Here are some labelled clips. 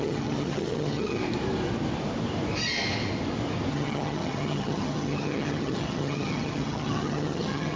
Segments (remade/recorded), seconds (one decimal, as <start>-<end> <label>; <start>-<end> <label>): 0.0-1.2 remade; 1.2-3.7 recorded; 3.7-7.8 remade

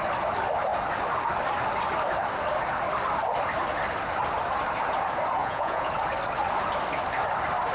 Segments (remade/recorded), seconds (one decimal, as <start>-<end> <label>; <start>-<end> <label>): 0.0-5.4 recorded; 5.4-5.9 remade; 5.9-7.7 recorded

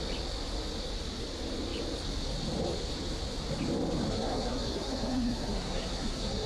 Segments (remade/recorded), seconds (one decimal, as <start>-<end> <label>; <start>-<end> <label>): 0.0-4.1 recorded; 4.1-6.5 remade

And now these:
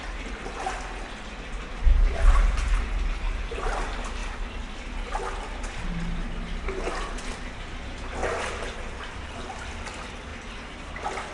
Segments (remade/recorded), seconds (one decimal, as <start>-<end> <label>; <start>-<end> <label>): 0.0-1.7 recorded; 1.7-2.8 remade; 2.8-8.2 recorded; 8.2-9.5 remade; 9.5-11.3 recorded

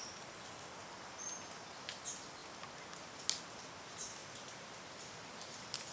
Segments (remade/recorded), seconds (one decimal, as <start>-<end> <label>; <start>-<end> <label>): 0.0-5.9 recorded

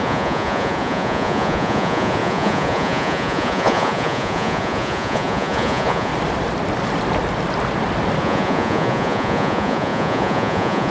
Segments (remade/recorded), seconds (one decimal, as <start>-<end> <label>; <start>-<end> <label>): 0.0-6.1 remade; 6.1-8.2 recorded; 8.2-10.9 remade